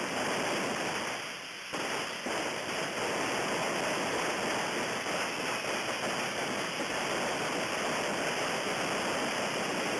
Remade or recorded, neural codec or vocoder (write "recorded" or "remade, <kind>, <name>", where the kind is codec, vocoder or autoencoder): recorded